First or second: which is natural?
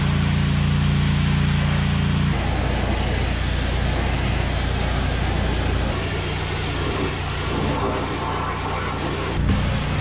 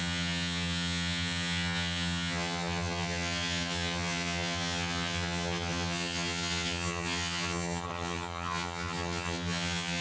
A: first